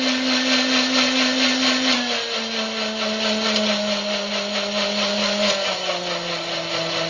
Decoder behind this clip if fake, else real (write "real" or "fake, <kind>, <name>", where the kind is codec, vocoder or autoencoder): real